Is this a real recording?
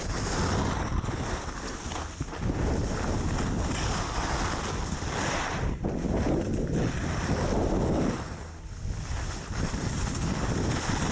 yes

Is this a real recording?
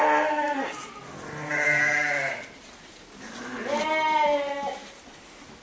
yes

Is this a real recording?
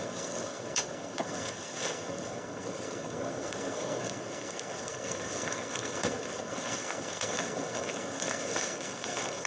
no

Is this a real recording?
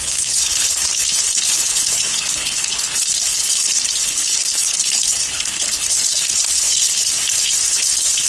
no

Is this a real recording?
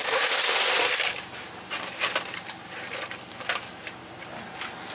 yes